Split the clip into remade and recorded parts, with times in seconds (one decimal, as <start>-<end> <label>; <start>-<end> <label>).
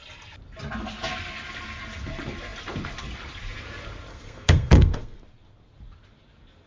0.0-4.1 recorded; 4.1-5.2 remade; 5.2-6.7 recorded